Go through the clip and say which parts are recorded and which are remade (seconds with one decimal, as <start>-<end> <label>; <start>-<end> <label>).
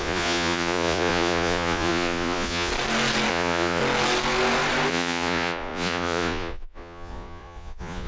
0.0-2.7 remade; 2.7-3.3 recorded; 3.3-3.8 remade; 3.8-4.9 recorded; 4.9-8.1 remade